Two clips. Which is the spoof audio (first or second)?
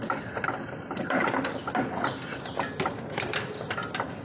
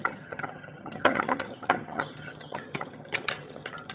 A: second